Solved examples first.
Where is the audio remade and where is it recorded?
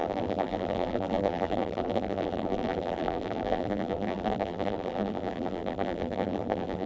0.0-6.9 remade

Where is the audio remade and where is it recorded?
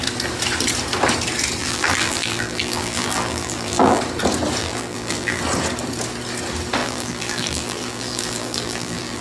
0.0-1.6 recorded; 1.6-4.0 remade; 4.0-4.6 recorded; 4.6-5.4 remade; 5.4-6.8 recorded; 6.8-9.2 remade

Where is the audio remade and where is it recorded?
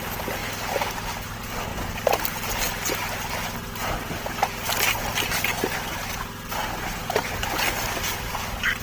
0.0-5.9 recorded; 5.9-6.6 remade; 6.6-8.8 recorded